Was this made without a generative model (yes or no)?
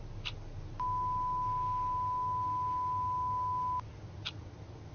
yes